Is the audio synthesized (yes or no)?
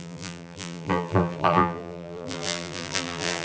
yes